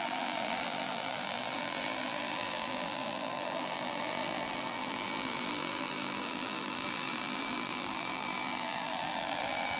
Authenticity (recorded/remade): remade